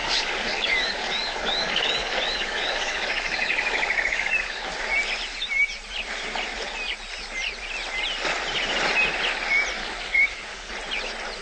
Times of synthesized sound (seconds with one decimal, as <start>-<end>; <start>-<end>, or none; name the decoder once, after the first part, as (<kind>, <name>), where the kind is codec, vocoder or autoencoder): 0.0-4.7 (codec, DAC); 9.8-10.7